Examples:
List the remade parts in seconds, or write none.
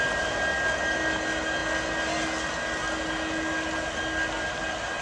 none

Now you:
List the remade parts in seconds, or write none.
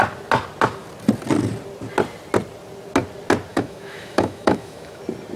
3.5-5.0 (autoencoder, DAC-VAE)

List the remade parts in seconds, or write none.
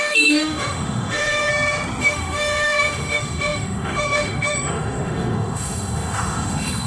0.0-1.5 (autoencoder, DAC-VAE); 2.0-6.9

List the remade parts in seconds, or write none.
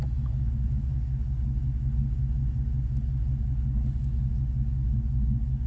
none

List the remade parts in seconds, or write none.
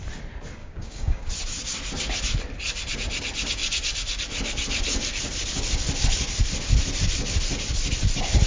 0.6-1.3 (codec, DAC)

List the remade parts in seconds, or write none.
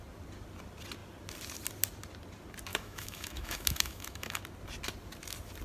2.7-4.4 (autoencoder, DAC-VAE)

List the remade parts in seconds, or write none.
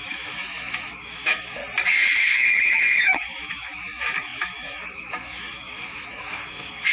0.0-1.6 (autoencoder, DAC-VAE); 2.2-6.9